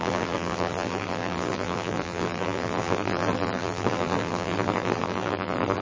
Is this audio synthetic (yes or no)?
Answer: yes